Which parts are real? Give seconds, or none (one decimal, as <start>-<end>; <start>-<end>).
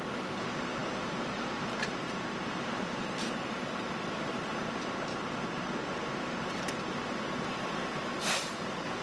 5.1-6.2